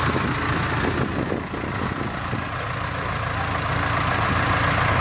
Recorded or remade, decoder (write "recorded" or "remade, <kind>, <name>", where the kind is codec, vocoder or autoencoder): recorded